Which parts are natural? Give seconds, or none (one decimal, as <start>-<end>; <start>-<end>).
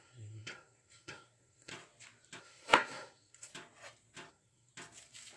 1.7-2.4; 3.5-4.3; 4.7-5.4